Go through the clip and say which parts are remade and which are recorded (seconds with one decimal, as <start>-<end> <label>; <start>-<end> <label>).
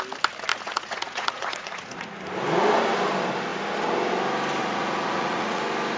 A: 0.0-0.5 recorded; 0.5-2.2 remade; 2.2-4.6 recorded; 4.6-5.6 remade; 5.6-6.0 recorded